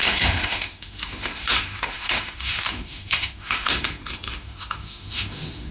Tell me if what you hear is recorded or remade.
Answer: remade